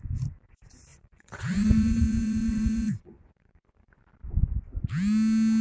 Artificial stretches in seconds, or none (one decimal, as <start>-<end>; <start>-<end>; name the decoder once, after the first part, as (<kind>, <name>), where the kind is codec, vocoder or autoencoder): 0.9-4.0 (vocoder, Vocos)